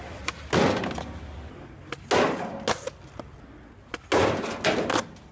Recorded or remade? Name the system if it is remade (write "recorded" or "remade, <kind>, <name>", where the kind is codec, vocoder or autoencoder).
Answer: recorded